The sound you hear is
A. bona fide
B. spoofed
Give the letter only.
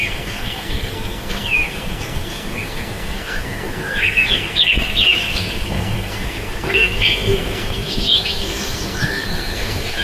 B